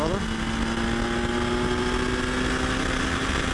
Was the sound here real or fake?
real